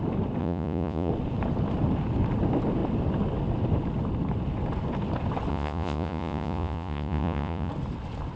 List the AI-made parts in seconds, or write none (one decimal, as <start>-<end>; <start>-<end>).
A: 0.4-1.1; 5.5-7.7